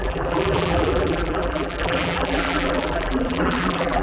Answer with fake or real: fake